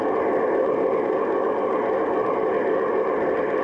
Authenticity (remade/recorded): recorded